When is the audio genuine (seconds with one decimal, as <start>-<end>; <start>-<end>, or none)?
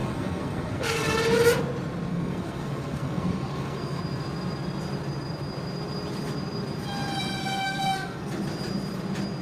1.2-2.1; 4.0-7.4; 8.3-9.4